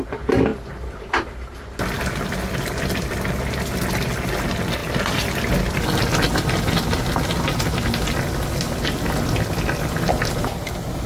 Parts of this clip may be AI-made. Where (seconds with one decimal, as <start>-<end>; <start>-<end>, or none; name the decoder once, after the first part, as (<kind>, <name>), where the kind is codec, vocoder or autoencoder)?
none